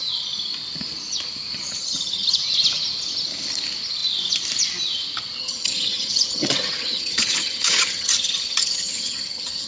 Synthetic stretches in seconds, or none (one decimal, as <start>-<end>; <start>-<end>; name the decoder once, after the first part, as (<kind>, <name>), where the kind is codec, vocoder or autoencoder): 1.8-2.4 (vocoder, HiFi-GAN); 5.4-9.7